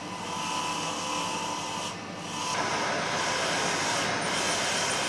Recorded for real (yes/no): yes